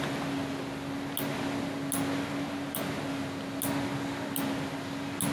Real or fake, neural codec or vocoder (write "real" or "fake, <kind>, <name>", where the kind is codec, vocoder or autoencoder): real